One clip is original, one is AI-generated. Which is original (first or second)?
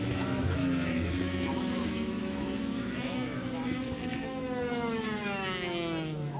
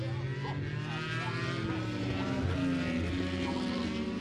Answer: second